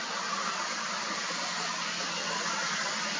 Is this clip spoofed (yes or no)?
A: no